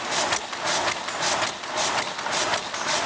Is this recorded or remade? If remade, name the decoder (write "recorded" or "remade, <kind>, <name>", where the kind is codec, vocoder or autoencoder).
recorded